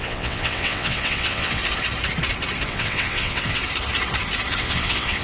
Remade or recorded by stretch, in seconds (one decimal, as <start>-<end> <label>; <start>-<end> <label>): 0.0-1.6 remade; 1.6-2.7 recorded; 2.7-3.6 remade; 3.6-4.6 recorded; 4.6-5.2 remade